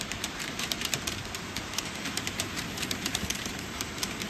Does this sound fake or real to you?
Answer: fake